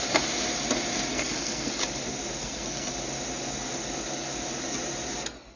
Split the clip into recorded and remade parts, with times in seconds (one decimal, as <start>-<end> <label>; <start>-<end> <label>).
0.0-1.1 recorded; 1.1-1.7 remade; 1.7-2.4 recorded; 2.4-2.9 remade; 2.9-5.6 recorded